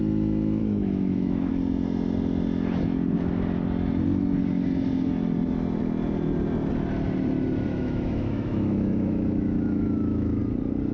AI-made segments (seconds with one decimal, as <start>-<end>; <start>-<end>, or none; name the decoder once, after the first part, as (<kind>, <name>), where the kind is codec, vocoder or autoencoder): 0.6-1.5 (autoencoder, DAC-VAE); 7.7-10.4

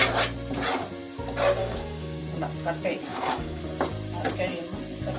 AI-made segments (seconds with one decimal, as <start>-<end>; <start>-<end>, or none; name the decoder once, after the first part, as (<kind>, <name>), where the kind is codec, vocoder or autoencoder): 1.6-2.2 (codec, DAC); 3.1-3.6

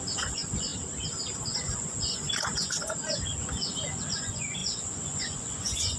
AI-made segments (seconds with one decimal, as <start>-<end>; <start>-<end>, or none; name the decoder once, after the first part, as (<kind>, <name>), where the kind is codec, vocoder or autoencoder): 0.0-0.7 (vocoder, Vocos); 1.4-6.0

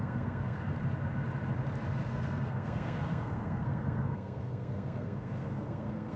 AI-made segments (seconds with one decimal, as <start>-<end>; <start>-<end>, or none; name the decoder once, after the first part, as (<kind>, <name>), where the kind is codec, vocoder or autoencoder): 0.0-0.7 (codec, SNAC); 2.1-6.2

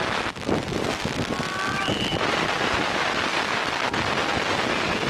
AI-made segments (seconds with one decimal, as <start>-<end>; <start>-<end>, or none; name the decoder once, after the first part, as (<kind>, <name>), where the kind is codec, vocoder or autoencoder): 0.0-1.0 (vocoder, BigVGAN v2); 1.9-5.1